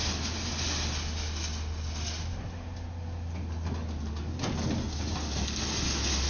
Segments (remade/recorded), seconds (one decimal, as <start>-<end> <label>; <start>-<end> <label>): 0.0-6.3 recorded